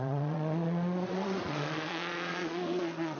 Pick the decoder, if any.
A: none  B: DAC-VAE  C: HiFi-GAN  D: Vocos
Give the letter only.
D